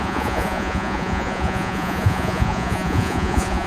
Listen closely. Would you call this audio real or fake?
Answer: fake